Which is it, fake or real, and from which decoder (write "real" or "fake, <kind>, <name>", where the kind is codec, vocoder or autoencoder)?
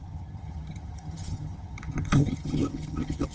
fake, vocoder, HiFi-GAN